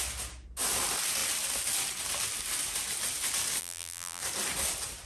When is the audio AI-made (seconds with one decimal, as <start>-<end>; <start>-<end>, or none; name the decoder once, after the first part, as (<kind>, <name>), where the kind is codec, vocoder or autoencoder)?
3.6-4.2 (vocoder, BigVGAN v2)